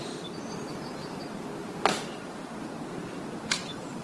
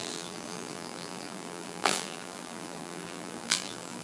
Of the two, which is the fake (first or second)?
second